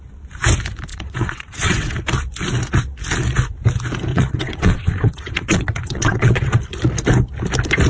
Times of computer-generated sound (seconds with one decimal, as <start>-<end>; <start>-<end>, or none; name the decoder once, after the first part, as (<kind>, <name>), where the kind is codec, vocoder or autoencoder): 0.9-2.0 (vocoder, WaveNeXt); 4.1-6.6